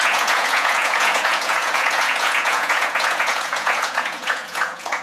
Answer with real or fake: fake